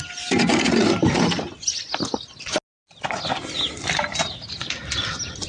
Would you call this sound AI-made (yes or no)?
no